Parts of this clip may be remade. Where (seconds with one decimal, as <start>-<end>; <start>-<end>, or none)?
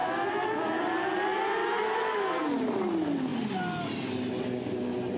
0.0-0.8; 1.6-2.4